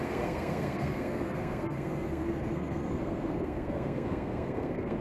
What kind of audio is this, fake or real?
fake